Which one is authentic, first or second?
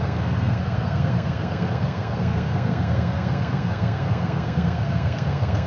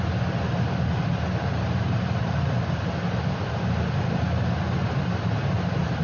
second